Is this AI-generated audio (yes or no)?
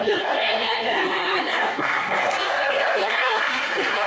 yes